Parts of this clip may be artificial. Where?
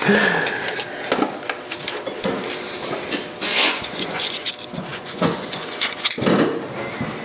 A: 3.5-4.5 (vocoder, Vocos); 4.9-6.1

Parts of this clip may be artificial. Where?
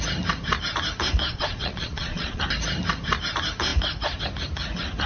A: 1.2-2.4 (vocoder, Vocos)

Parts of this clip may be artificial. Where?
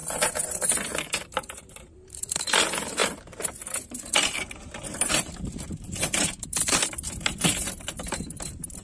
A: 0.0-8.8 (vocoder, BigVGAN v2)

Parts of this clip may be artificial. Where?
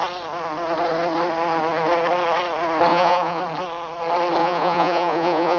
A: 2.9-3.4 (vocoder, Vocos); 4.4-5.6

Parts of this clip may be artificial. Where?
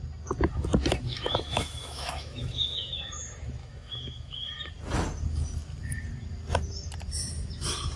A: 1.1-2.9 (autoencoder, DAC-VAE); 3.6-4.7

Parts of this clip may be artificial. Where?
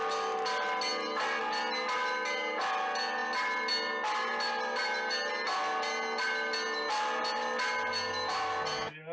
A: none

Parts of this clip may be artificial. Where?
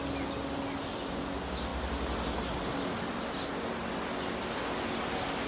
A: none